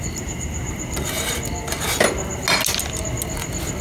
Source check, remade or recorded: recorded